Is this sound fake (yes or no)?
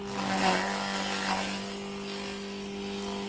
no